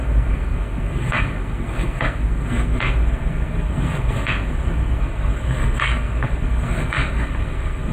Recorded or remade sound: remade